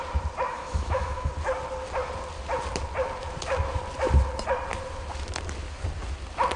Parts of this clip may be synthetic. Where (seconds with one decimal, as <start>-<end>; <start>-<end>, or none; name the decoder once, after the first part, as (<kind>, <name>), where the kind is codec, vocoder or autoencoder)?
0.5-1.3 (autoencoder, DAC-VAE)